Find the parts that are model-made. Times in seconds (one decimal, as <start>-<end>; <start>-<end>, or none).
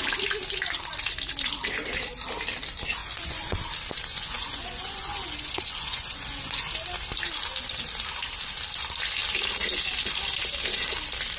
3.0-3.6; 4.1-6.7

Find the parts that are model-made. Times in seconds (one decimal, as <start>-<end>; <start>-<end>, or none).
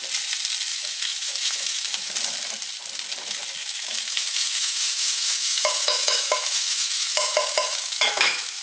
0.7-2.1; 3.6-8.6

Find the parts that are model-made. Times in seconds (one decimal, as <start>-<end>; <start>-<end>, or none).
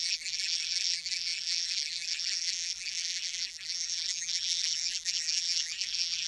0.0-6.3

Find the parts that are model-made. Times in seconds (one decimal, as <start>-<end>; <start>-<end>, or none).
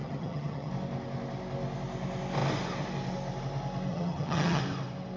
0.0-0.7; 3.9-4.6